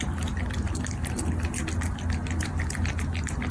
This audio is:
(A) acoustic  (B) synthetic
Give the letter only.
A